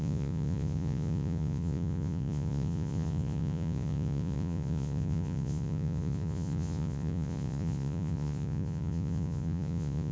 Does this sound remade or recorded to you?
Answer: remade